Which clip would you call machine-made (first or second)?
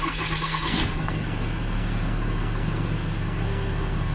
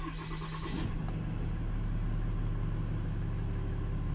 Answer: first